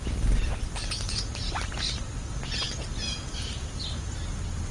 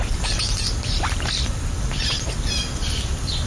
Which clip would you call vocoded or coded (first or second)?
second